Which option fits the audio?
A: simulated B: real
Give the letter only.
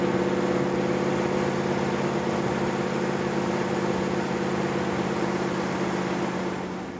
B